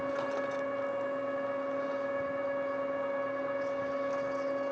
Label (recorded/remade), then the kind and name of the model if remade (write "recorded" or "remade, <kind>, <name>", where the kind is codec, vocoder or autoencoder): recorded